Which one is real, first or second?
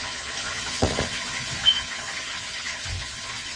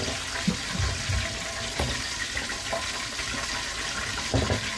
second